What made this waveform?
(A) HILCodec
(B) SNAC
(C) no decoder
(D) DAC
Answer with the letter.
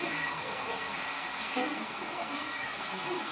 B